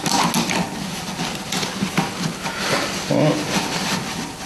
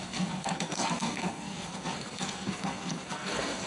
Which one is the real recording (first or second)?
first